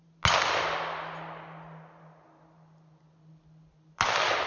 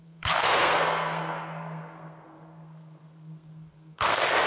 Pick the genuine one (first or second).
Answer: first